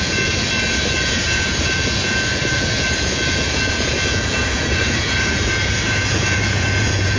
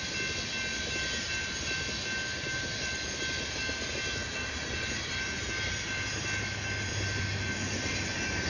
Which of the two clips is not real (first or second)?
first